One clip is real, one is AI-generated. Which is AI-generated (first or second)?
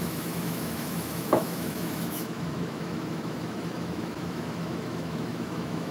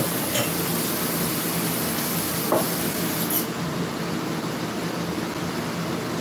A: first